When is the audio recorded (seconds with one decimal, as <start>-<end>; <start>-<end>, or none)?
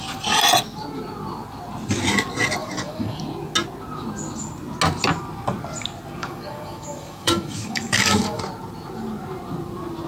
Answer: 0.0-2.6; 3.2-6.2; 8.4-10.1